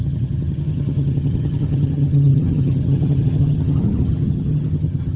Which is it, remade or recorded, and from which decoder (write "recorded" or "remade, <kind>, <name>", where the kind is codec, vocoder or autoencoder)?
remade, vocoder, HiFi-GAN